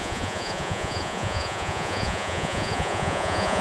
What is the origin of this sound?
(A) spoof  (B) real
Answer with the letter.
A